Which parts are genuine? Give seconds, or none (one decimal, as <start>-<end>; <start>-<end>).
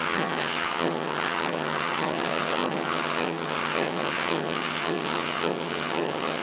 none